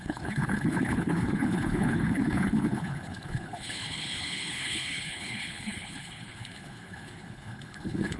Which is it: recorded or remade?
remade